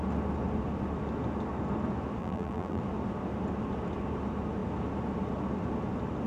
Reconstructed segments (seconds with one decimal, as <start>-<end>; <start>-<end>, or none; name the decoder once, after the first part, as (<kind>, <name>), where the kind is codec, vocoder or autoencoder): 2.2-2.8 (vocoder, BigVGAN v2)